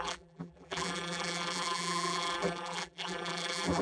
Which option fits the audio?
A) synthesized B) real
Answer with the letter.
A